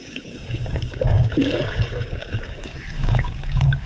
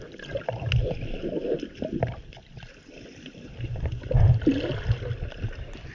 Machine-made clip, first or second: first